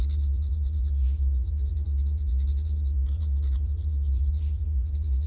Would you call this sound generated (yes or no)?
yes